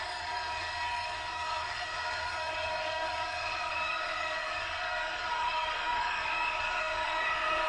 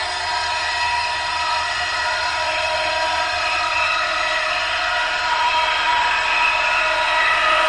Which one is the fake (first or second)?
first